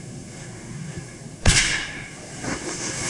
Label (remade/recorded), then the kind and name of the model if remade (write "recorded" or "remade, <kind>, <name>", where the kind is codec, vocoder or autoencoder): remade, codec, SNAC